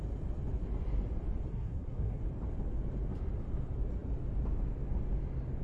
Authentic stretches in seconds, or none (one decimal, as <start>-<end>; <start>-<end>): 0.0-1.5; 2.2-5.6